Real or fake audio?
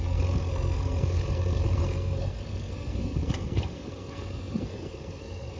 fake